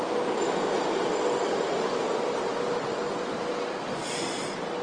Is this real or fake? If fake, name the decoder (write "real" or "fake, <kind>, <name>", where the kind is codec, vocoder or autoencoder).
real